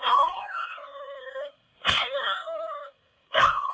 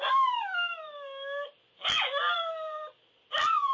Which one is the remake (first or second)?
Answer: first